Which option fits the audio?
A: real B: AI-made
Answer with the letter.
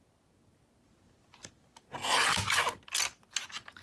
A